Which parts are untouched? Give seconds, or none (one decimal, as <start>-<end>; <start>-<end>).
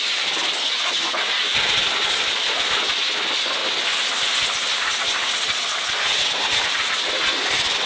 0.0-7.9